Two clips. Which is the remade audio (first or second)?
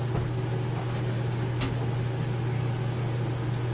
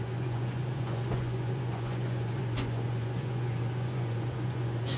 second